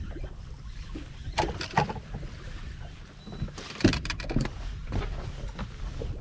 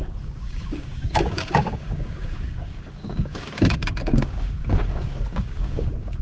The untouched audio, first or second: first